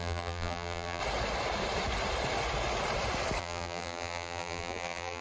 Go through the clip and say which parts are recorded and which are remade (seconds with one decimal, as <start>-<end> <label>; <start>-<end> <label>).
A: 0.0-1.0 remade; 1.0-3.4 recorded; 3.4-5.2 remade